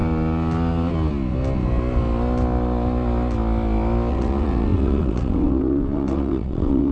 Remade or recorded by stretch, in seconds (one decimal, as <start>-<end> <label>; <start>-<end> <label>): 0.0-4.1 recorded; 4.1-6.9 remade